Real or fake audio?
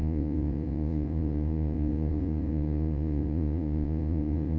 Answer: fake